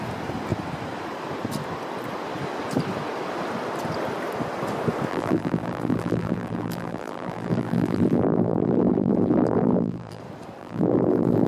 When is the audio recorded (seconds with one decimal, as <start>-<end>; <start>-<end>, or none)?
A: 0.0-5.1; 10.2-10.6